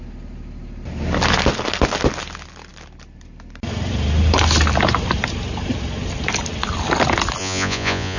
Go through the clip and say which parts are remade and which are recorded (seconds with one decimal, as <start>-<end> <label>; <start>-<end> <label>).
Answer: 0.0-7.4 recorded; 7.4-8.2 remade